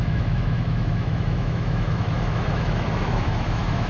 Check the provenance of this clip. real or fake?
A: fake